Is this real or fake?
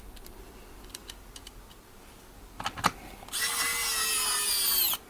real